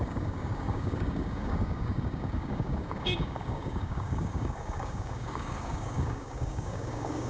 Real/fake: fake